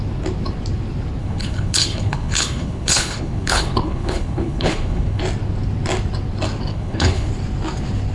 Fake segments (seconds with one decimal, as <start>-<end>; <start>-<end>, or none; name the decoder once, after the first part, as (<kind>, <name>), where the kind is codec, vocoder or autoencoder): 1.2-5.2 (codec, HILCodec); 6.7-7.3